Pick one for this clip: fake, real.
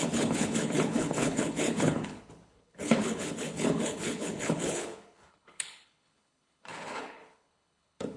fake